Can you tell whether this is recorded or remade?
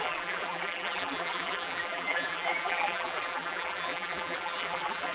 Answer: remade